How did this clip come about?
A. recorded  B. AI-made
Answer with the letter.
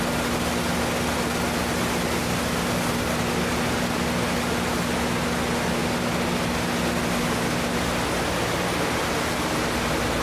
A